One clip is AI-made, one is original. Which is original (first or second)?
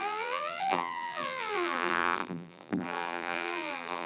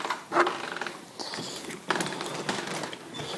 second